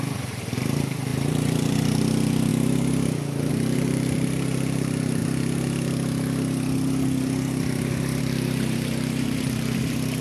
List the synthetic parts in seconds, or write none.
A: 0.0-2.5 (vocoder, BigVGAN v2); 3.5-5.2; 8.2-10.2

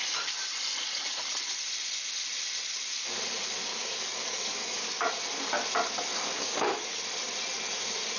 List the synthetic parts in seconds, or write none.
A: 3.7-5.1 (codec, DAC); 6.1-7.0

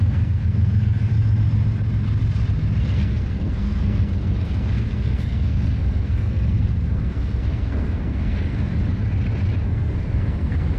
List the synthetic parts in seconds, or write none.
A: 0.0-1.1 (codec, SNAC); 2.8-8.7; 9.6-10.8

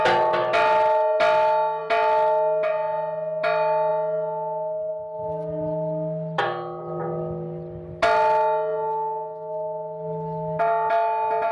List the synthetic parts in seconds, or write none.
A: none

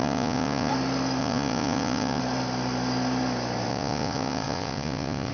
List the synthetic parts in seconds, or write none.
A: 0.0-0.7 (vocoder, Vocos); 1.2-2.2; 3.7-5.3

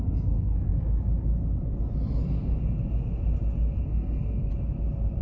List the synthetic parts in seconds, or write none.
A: 0.0-0.7 (codec, SNAC); 3.8-4.5